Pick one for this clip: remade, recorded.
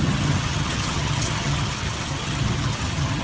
remade